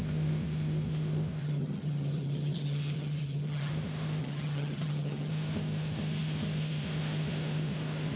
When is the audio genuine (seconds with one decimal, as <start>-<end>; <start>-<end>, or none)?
0.0-1.4; 3.7-4.2; 5.3-8.2